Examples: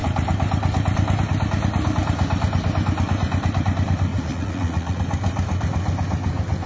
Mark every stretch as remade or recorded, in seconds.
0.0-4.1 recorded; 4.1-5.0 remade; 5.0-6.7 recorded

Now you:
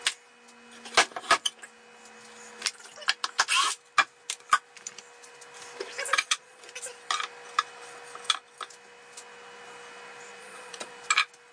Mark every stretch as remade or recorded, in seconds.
0.0-6.1 recorded; 6.1-6.6 remade; 6.6-10.4 recorded; 10.4-10.9 remade; 10.9-11.5 recorded

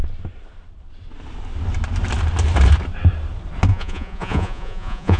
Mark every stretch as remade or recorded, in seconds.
0.0-3.7 recorded; 3.7-5.2 remade

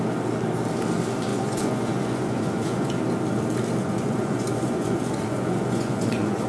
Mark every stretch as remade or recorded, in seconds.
0.0-1.3 recorded; 1.3-3.0 remade; 3.0-3.8 recorded; 3.8-6.5 remade

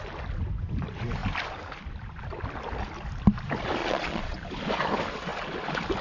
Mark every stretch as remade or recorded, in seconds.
0.0-3.8 recorded; 3.8-4.4 remade; 4.4-6.0 recorded

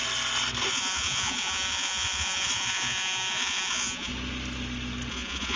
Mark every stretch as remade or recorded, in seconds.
0.0-0.7 recorded; 0.7-4.1 remade; 4.1-5.1 recorded; 5.1-5.6 remade